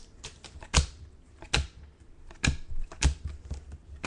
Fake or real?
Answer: real